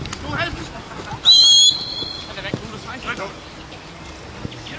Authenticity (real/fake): real